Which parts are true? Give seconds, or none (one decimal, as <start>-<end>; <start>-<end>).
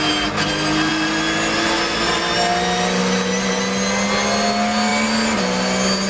0.0-6.1